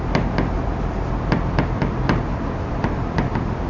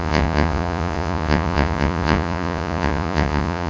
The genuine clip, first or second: first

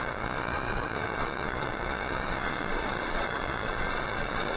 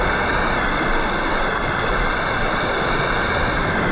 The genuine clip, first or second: second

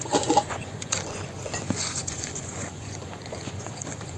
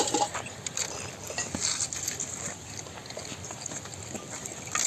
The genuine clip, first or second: second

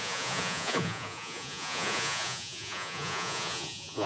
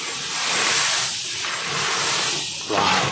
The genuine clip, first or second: second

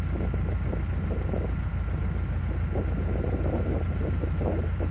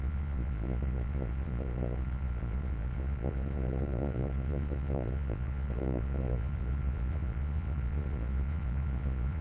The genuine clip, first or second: first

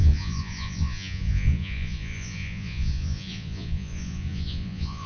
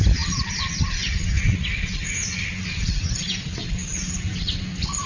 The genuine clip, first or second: second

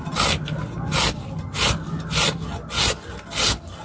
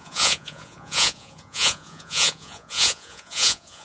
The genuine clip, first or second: first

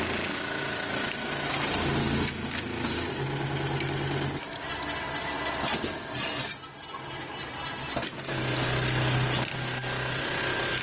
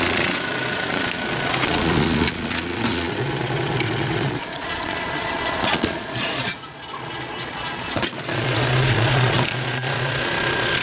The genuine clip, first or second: first